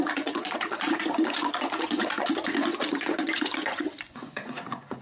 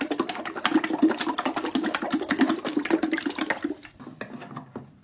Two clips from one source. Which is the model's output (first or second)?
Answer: first